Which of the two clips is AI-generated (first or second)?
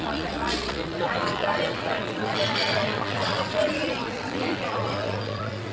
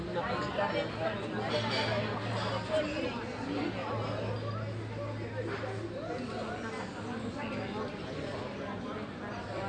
first